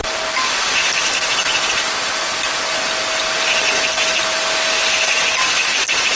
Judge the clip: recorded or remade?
recorded